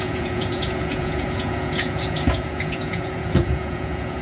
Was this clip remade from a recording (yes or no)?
yes